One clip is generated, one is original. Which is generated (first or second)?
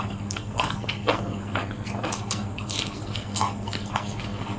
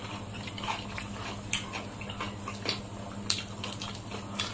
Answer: first